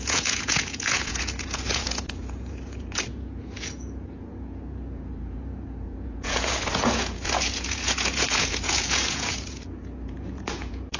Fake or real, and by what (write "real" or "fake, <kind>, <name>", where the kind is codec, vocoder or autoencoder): fake, vocoder, Vocos